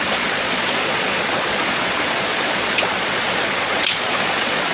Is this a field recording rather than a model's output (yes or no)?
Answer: no